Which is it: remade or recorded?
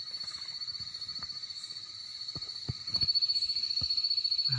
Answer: remade